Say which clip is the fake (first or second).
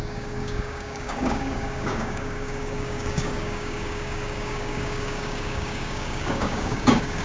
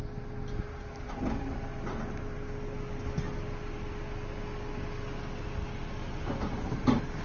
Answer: first